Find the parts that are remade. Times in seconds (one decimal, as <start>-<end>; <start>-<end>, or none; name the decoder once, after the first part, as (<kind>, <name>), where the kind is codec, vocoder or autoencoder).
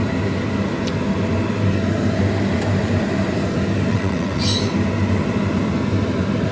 3.9-4.4 (vocoder, WaveNeXt)